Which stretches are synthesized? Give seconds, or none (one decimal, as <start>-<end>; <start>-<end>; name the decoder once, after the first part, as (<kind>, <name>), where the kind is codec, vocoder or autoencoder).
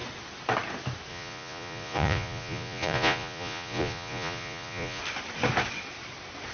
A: 1.1-5.0 (vocoder, Vocos)